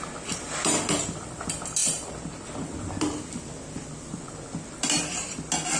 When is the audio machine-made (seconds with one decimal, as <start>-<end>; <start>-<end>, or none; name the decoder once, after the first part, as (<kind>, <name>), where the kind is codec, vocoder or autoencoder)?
none